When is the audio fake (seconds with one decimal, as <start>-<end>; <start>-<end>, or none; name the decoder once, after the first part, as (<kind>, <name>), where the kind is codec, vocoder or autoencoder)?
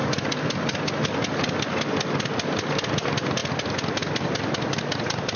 none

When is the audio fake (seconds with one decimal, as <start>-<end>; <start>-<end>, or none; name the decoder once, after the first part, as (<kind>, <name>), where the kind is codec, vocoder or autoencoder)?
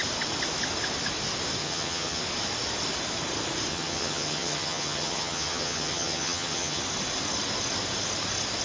1.6-2.2 (vocoder, HiFi-GAN); 3.7-6.8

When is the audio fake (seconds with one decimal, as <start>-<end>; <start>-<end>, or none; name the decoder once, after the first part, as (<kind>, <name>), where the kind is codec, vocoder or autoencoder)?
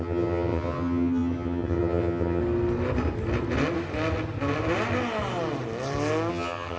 0.0-2.4 (vocoder, HiFi-GAN); 6.3-6.8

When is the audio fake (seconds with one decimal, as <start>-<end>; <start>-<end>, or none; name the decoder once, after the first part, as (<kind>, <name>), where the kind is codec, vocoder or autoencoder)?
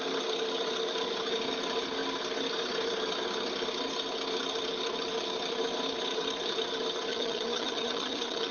7.1-8.5 (vocoder, HiFi-GAN)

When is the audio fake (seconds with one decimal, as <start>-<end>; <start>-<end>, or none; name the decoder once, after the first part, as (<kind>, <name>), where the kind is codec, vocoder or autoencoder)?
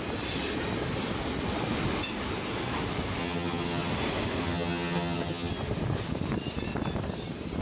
3.2-3.9 (vocoder, HiFi-GAN); 4.4-5.5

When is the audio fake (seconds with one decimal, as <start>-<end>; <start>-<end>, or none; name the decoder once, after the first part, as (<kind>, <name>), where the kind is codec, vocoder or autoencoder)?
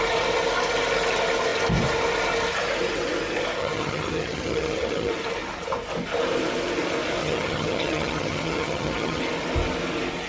3.6-5.1 (vocoder, HiFi-GAN); 7.2-9.2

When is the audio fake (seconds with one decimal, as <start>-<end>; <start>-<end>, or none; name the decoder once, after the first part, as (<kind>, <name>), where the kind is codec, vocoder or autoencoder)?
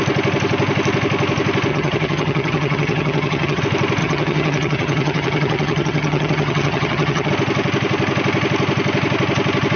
1.7-3.6 (vocoder, HiFi-GAN); 4.0-7.3